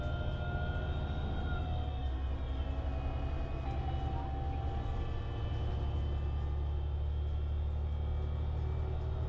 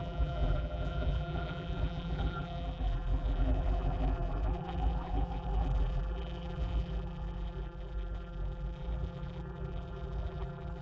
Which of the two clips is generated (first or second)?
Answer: second